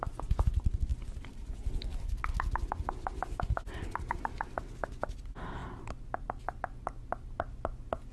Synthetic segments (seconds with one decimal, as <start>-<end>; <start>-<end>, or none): none